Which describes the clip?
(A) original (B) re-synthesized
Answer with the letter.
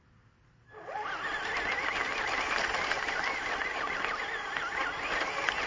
A